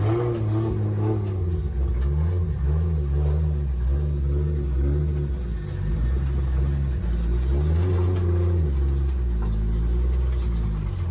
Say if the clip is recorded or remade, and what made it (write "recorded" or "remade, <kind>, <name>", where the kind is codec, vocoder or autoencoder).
recorded